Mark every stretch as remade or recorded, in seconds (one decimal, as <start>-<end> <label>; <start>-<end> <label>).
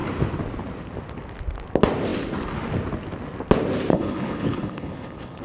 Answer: 0.0-3.9 recorded; 3.9-5.4 remade